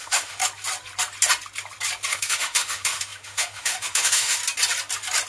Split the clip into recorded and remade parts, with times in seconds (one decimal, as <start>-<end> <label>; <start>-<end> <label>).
0.0-0.4 remade; 0.4-2.1 recorded; 2.1-4.4 remade; 4.4-5.3 recorded